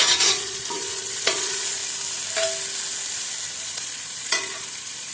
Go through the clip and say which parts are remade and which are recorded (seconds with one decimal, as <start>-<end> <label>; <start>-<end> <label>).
0.0-1.8 remade; 1.8-3.6 recorded; 3.6-5.1 remade